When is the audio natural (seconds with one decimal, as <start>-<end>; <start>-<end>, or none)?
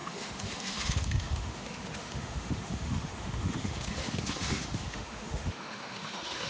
none